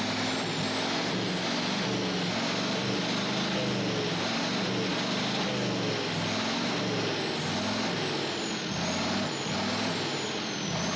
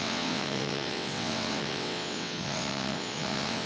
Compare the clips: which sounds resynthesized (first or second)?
second